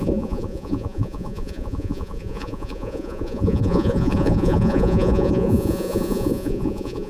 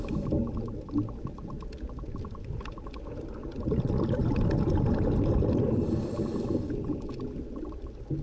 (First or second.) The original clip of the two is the second